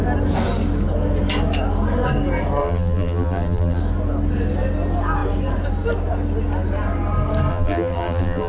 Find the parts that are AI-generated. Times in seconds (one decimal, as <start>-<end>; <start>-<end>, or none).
2.6-3.8; 7.5-8.5